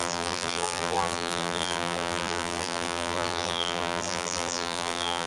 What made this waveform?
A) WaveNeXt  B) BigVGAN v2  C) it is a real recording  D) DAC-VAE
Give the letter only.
B